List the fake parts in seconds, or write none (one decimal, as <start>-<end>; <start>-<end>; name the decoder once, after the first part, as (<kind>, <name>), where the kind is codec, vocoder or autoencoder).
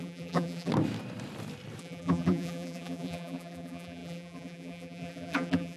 0.0-0.7 (vocoder, BigVGAN v2); 1.8-5.8